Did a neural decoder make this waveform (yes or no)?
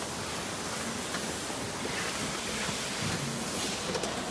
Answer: no